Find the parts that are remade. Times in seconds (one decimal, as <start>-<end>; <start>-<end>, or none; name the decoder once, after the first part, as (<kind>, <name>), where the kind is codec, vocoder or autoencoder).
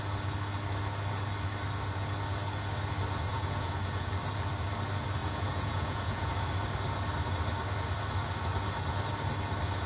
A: 3.3-4.1 (vocoder, Vocos); 5.2-6.3